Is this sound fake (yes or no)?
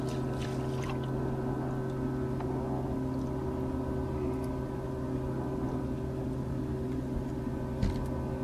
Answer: no